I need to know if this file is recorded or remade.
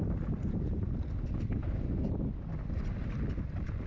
recorded